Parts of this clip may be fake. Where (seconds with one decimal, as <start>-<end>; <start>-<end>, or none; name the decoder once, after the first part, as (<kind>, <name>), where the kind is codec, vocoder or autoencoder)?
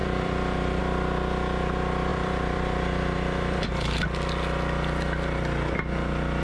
0.0-0.8 (vocoder, BigVGAN v2); 2.1-4.0